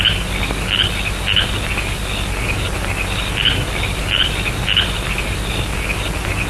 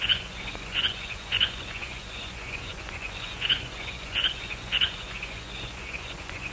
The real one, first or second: first